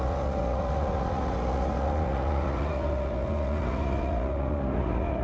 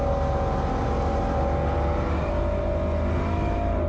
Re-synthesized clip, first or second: first